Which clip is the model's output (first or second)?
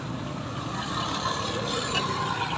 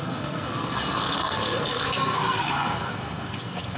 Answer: second